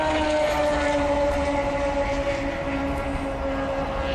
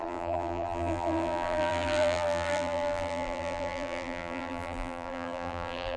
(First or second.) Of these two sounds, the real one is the first